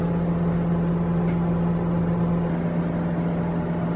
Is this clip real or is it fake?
real